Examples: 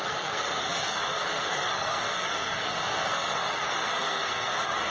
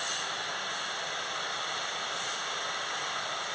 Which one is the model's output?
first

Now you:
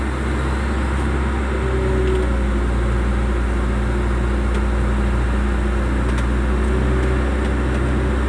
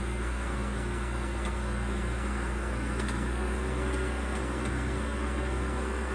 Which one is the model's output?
second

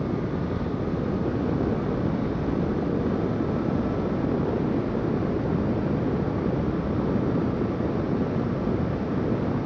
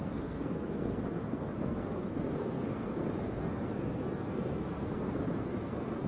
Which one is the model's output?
second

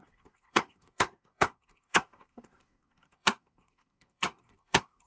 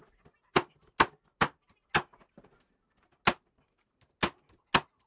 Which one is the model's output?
first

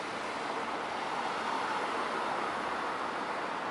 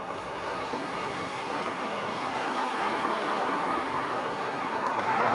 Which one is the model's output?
second